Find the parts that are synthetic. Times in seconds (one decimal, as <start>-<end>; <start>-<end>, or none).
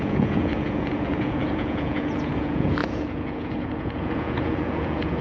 0.0-5.2